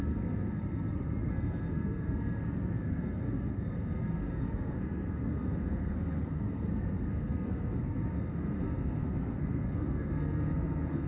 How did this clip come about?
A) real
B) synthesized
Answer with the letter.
B